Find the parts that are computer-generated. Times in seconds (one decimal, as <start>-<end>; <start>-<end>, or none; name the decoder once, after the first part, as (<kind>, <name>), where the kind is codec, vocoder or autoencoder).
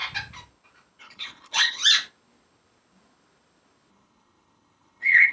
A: 1.0-1.8 (codec, HILCodec); 3.9-5.3